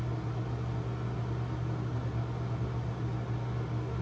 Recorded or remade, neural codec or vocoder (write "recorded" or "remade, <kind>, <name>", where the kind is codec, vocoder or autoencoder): recorded